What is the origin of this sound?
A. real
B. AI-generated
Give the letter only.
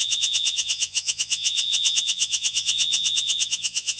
B